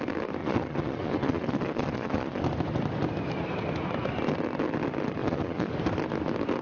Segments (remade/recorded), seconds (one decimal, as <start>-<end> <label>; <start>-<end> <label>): 0.0-0.4 recorded; 0.4-2.4 remade; 2.4-5.2 recorded; 5.2-5.7 remade; 5.7-6.6 recorded